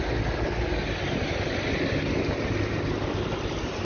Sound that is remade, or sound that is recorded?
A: recorded